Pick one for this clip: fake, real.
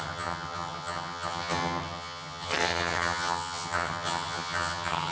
fake